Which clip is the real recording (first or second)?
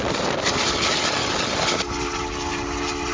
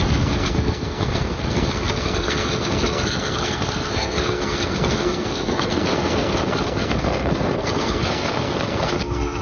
first